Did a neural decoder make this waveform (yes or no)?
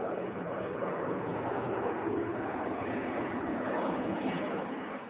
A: yes